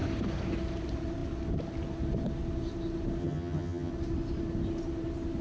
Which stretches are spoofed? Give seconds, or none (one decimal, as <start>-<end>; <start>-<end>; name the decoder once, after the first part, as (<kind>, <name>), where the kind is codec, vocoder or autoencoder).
3.2-3.9 (vocoder, HiFi-GAN)